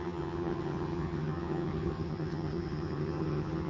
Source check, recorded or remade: remade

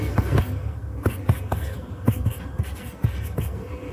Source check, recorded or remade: remade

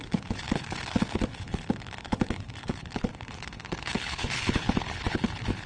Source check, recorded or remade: remade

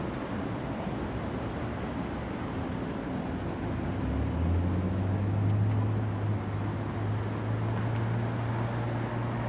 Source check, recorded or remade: recorded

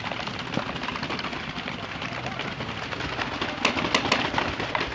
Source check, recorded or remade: recorded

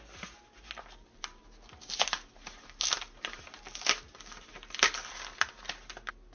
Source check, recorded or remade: recorded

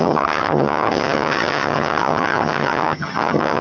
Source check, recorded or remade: remade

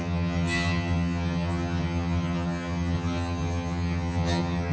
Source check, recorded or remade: remade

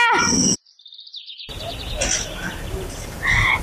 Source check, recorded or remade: recorded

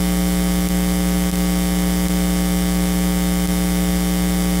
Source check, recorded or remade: recorded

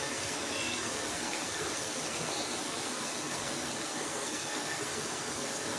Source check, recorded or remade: remade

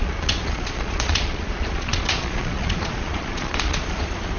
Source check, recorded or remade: remade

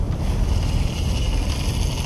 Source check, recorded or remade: recorded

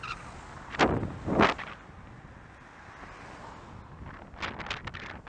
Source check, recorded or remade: recorded